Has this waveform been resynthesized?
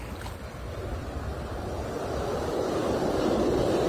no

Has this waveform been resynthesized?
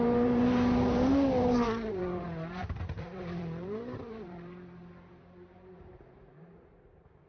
yes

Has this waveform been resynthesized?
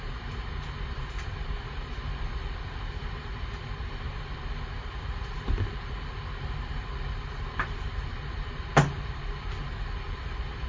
no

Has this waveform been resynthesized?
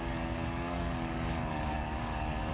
yes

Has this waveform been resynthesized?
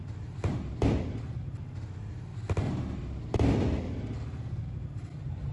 no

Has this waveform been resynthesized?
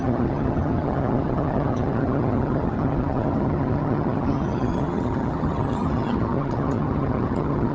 yes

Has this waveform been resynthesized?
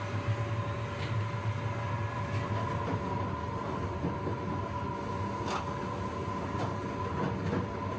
no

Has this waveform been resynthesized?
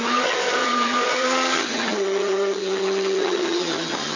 yes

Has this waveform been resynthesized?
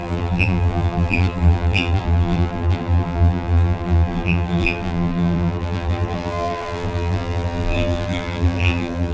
yes